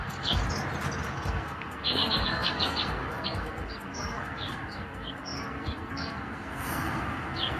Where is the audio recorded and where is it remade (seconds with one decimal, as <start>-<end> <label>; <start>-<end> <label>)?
0.0-0.4 remade; 0.4-1.1 recorded; 1.1-7.6 remade